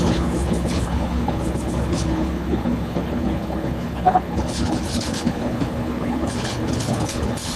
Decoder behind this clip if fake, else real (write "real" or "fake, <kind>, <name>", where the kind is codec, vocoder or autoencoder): fake, codec, HILCodec